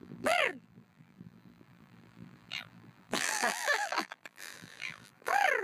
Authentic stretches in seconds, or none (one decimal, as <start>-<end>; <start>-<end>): none